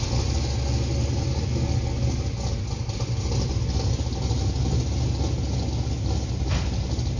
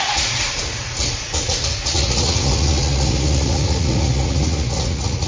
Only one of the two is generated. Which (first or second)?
second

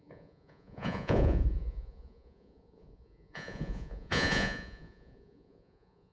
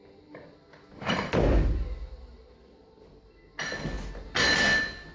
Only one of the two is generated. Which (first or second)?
first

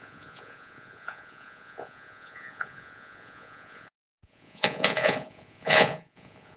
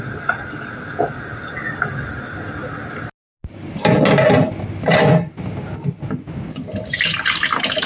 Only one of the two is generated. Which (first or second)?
first